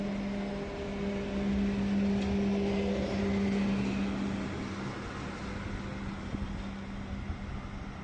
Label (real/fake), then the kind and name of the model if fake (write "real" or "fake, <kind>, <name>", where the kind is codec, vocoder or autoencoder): real